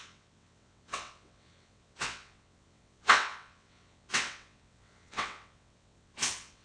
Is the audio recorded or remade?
remade